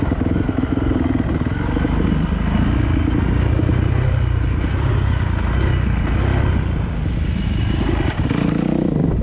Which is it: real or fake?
real